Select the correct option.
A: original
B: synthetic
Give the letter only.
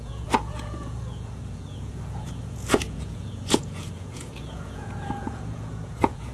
B